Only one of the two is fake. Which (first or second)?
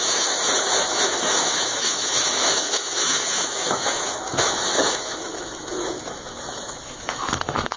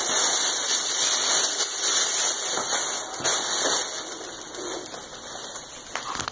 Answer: first